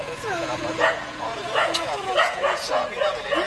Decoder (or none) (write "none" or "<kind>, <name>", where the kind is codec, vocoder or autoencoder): vocoder, Vocos